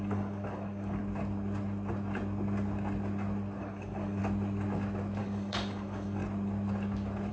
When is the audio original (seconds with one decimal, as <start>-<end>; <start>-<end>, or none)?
1.0-3.6; 4.2-5.2; 6.2-7.3